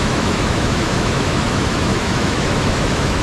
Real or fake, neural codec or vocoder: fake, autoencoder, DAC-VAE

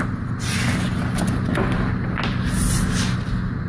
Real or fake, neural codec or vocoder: real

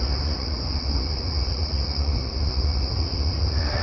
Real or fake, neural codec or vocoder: fake, vocoder, Vocos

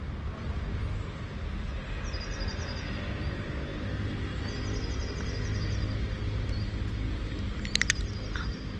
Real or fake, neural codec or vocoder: real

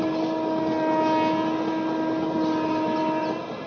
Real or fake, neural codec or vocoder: real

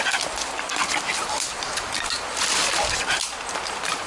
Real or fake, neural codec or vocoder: real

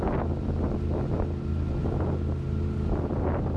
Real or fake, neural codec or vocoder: real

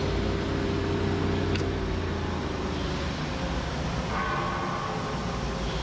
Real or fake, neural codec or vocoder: real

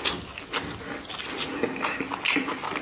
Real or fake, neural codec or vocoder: real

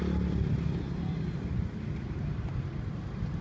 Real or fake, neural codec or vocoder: real